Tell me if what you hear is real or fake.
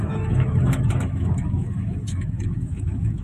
fake